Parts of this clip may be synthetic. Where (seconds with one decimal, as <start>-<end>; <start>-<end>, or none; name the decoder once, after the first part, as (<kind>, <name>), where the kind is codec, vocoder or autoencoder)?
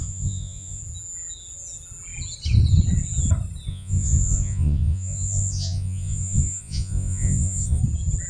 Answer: 0.0-0.8 (vocoder, Vocos); 3.7-7.8